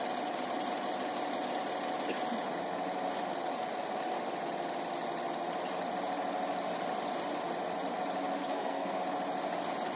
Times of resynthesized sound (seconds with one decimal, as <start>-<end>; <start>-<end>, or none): 8.4-9.0